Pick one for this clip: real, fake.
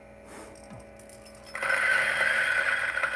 real